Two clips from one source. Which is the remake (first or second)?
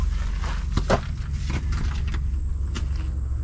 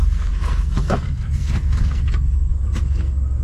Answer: second